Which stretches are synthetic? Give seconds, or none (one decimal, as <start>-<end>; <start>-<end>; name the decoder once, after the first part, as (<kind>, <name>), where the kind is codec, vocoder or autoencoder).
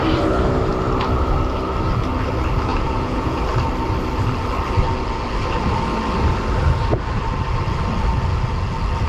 2.7-3.4 (vocoder, Vocos)